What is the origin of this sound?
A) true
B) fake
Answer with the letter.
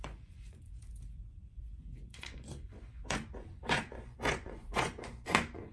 B